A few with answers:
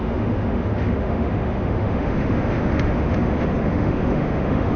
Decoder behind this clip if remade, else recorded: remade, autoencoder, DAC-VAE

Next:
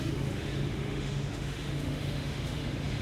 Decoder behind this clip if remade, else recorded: remade, autoencoder, DAC-VAE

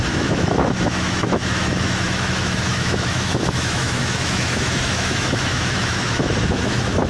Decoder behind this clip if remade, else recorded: remade, autoencoder, DAC-VAE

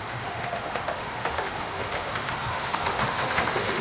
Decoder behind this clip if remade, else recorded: remade, autoencoder, DAC-VAE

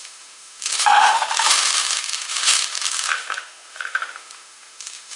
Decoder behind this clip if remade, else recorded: remade, autoencoder, DAC-VAE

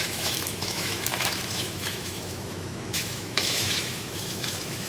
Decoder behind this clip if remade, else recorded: remade, autoencoder, DAC-VAE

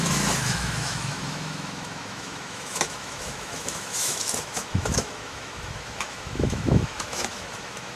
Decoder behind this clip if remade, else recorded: remade, autoencoder, DAC-VAE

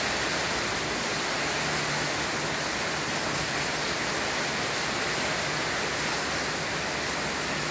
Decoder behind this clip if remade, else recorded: recorded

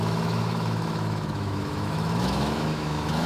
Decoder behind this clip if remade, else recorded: remade, autoencoder, DAC-VAE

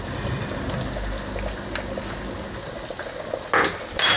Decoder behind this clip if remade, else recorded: recorded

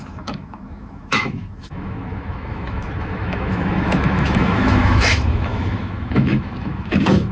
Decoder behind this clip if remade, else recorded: remade, autoencoder, DAC-VAE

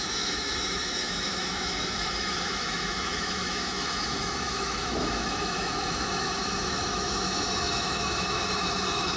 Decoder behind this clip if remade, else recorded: remade, autoencoder, DAC-VAE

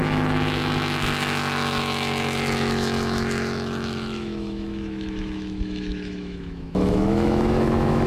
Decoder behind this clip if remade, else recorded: remade, autoencoder, DAC-VAE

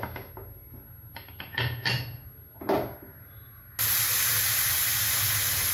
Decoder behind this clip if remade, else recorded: recorded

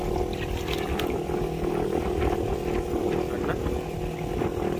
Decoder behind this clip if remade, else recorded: recorded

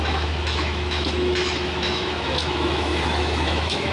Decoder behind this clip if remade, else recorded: remade, autoencoder, DAC-VAE